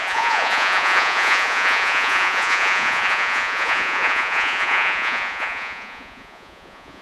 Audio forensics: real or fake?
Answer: fake